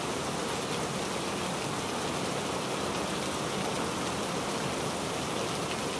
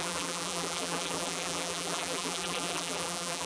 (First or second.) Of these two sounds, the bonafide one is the first